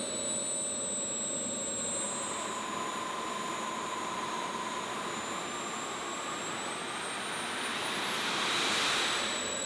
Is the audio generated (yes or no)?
no